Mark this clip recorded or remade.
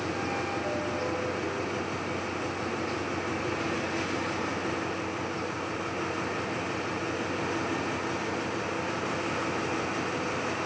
recorded